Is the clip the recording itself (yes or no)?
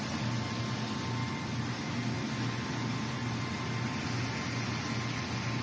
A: yes